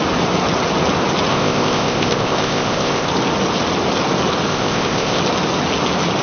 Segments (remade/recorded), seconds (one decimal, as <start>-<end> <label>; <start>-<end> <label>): 0.0-1.3 recorded; 1.3-3.1 remade; 3.1-4.5 recorded; 4.5-5.2 remade; 5.2-6.2 recorded